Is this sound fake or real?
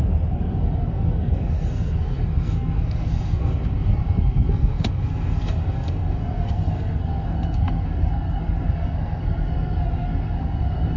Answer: fake